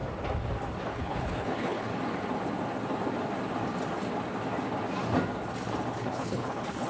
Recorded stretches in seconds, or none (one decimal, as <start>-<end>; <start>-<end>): 0.0-0.9; 1.9-6.0